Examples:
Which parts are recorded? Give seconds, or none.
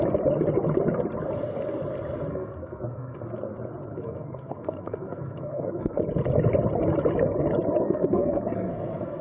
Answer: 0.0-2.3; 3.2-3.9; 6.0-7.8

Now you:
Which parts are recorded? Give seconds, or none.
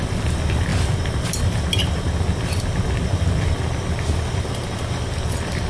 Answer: 0.0-5.7